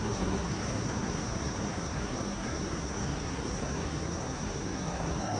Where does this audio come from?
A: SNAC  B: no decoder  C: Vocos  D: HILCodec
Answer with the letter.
A